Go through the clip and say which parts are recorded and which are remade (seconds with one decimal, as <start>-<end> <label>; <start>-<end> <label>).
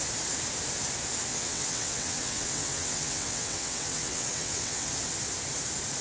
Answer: 0.0-1.3 recorded; 1.3-4.9 remade; 4.9-6.0 recorded